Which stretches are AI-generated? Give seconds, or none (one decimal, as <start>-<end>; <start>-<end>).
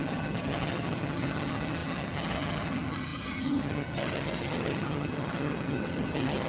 0.0-6.5